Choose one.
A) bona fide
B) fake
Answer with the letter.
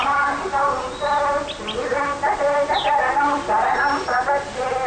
A